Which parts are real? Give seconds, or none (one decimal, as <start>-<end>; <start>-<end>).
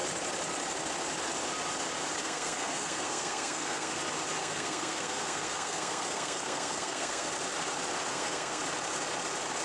0.0-2.2; 4.0-4.4; 7.3-8.1; 8.6-9.6